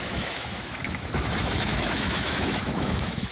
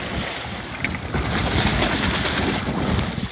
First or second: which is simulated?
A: first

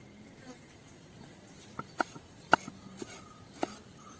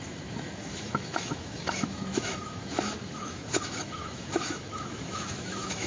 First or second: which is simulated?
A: second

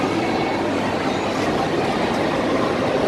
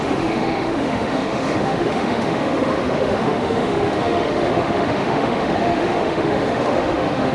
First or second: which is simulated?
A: second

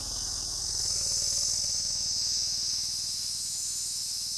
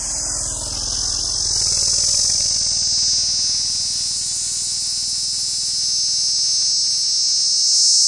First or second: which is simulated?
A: first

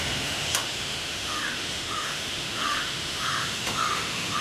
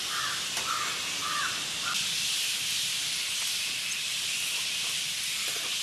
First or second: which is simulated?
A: first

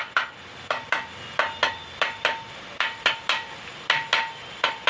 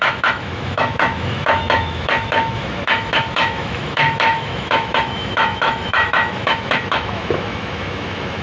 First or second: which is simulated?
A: second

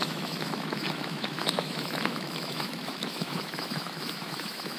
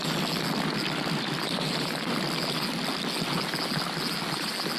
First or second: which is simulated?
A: first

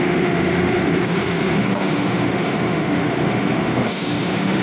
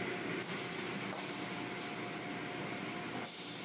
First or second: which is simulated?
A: first